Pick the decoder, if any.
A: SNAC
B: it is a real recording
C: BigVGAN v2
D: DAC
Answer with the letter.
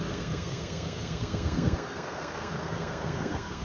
A